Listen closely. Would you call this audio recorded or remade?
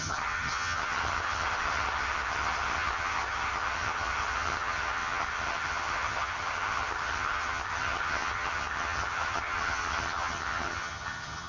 remade